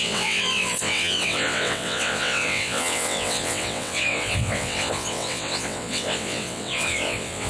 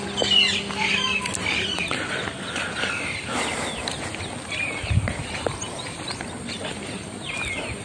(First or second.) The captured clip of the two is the second